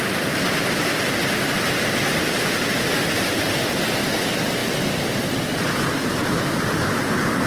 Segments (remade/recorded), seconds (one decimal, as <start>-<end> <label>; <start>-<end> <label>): 0.0-7.5 recorded

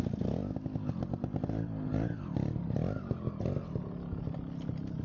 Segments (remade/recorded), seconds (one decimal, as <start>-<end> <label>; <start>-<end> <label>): 0.0-5.0 recorded

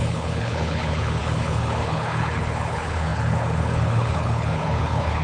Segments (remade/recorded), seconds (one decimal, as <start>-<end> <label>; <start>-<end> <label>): 0.0-5.2 remade

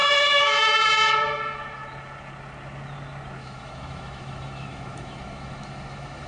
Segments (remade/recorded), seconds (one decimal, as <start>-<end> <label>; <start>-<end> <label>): 0.0-0.8 remade; 0.8-3.4 recorded; 3.4-6.3 remade